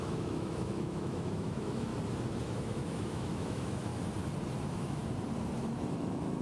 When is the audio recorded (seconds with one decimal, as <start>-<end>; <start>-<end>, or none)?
1.9-2.4; 3.9-4.6; 5.0-5.9